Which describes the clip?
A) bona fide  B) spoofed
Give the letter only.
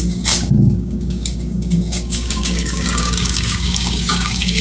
B